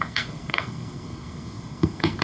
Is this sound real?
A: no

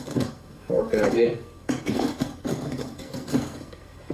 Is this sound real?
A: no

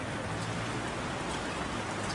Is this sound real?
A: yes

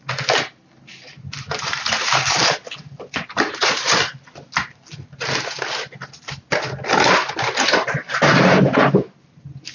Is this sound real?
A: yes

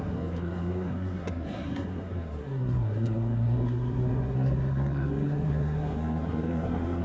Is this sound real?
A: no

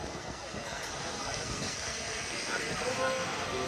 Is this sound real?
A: no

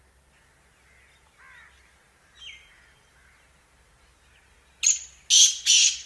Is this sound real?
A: yes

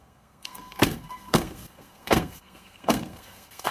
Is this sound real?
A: no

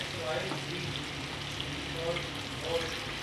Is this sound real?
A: yes